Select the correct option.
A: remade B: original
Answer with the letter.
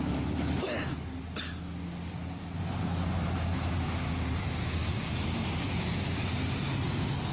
B